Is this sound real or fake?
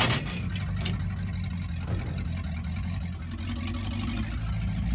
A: real